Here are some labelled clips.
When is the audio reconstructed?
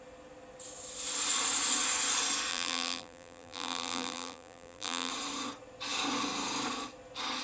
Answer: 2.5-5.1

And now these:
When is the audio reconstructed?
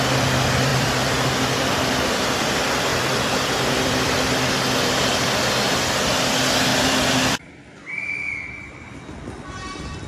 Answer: 0.7-2.1; 2.9-4.5; 6.7-7.6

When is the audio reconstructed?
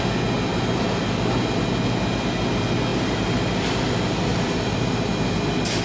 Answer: 2.9-3.8; 4.3-5.1